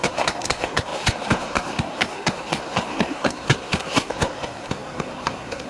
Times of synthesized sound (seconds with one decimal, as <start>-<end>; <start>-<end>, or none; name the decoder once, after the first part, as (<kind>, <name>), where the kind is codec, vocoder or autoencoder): 0.0-5.7 (codec, SNAC)